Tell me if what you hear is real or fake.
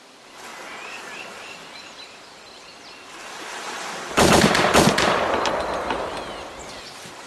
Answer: fake